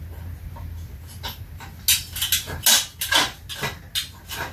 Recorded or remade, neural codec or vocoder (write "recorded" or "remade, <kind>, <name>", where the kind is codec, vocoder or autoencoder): recorded